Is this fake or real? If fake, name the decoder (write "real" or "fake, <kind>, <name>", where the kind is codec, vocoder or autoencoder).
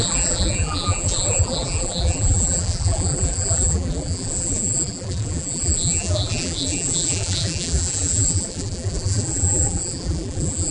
fake, vocoder, BigVGAN v2